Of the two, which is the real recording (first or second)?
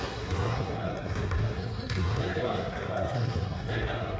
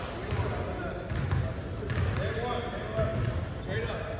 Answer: second